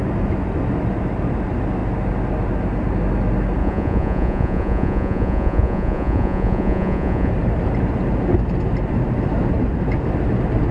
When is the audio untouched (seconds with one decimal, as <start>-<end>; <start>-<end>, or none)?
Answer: 0.0-3.6; 7.3-10.7